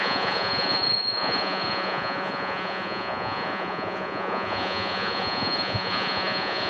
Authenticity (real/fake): fake